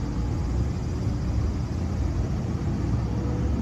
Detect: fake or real real